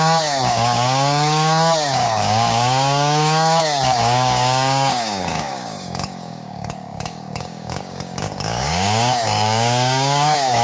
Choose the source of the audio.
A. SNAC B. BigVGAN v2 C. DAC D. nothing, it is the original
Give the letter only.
C